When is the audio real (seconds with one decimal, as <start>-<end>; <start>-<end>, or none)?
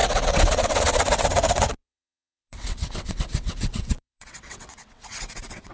none